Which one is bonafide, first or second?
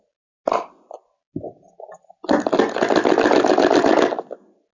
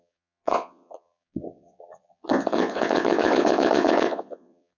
first